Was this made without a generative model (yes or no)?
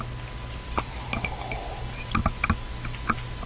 yes